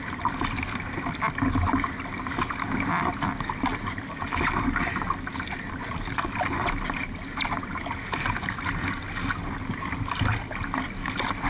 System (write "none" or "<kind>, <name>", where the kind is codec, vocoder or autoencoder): none